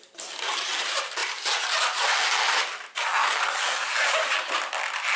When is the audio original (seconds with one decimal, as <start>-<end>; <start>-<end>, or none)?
0.0-3.2; 4.1-5.2